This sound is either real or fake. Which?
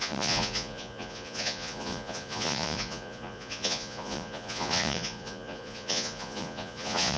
fake